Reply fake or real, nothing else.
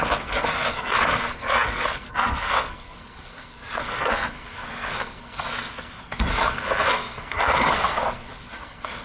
fake